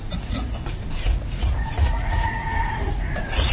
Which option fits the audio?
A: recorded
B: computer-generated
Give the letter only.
B